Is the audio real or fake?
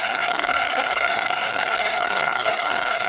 fake